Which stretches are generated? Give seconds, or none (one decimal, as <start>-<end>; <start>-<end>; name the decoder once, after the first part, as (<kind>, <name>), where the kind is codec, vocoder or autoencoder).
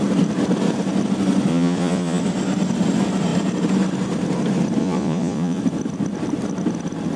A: 1.5-2.2 (vocoder, Vocos); 4.8-5.6